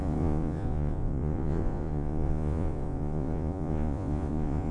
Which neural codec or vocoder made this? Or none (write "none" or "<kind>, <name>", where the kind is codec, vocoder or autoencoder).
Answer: vocoder, Vocos